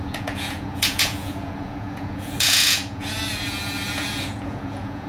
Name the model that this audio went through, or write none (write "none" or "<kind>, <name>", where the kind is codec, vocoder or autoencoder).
vocoder, Vocos